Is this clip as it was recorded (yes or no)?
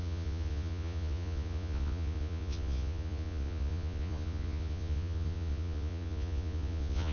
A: no